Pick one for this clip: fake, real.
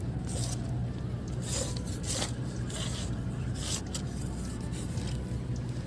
real